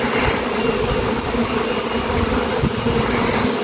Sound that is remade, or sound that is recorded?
recorded